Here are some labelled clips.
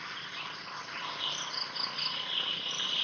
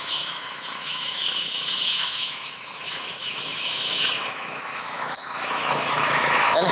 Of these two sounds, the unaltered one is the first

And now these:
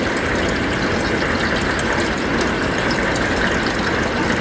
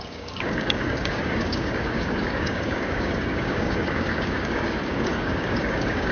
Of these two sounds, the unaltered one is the first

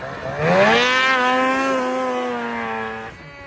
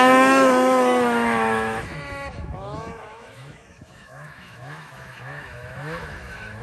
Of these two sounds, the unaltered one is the first